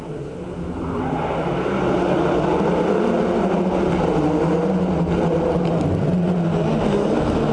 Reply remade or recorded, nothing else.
recorded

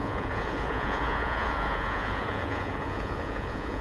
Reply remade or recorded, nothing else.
remade